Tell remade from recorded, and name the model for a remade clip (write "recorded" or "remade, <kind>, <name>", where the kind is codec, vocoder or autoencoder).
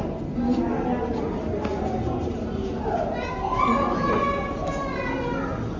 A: recorded